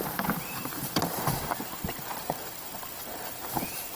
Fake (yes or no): yes